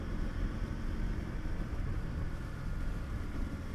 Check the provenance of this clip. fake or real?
fake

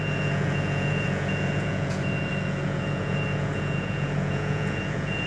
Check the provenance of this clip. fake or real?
fake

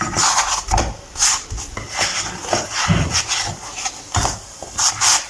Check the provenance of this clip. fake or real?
real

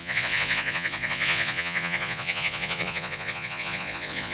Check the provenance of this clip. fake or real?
fake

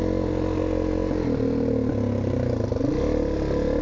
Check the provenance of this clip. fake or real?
real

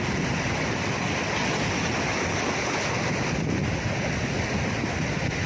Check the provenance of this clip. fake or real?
real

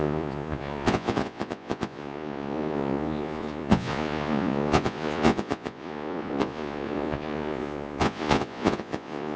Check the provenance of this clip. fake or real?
fake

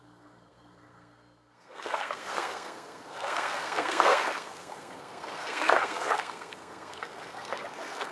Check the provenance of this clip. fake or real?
fake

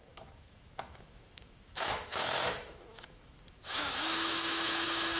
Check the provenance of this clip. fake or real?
fake